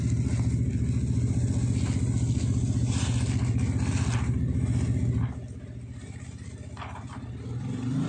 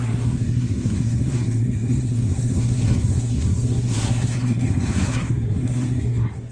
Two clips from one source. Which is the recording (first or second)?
first